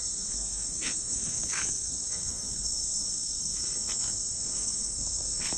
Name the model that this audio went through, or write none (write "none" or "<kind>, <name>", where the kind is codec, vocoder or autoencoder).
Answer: codec, SNAC